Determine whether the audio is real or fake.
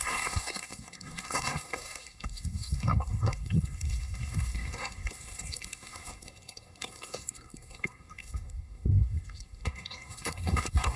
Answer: fake